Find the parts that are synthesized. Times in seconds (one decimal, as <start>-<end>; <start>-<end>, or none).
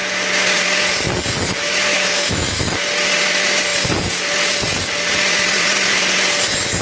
1.9-2.6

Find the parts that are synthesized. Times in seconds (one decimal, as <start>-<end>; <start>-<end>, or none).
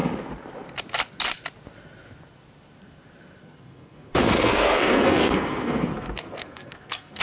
3.4-7.2